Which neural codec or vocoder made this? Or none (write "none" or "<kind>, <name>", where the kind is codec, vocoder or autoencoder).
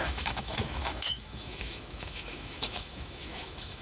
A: autoencoder, DAC-VAE